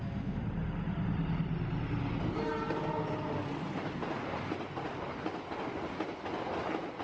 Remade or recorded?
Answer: recorded